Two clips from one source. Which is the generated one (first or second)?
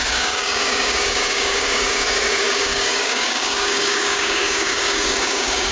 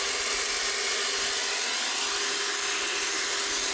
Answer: first